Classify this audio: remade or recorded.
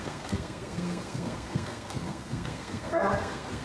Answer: remade